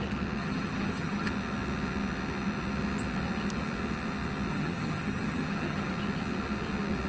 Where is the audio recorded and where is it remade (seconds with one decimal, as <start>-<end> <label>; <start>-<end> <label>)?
0.0-0.4 recorded; 0.4-1.3 remade; 1.3-4.5 recorded; 4.5-5.9 remade; 5.9-7.1 recorded